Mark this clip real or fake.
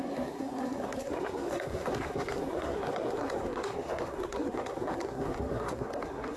fake